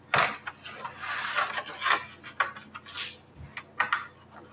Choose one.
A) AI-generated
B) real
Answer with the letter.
B